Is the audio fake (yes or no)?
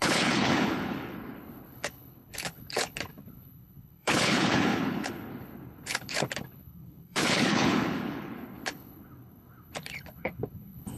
yes